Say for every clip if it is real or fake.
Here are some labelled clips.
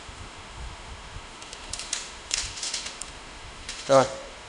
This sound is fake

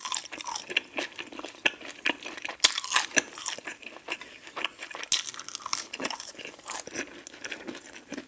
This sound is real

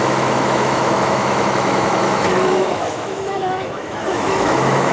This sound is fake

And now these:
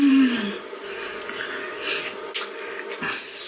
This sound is real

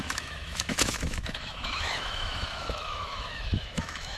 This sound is fake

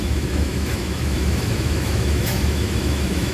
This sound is fake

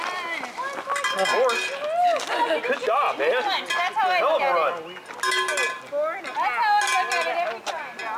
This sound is real